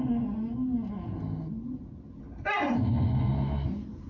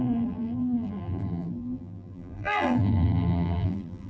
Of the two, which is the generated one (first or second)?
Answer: second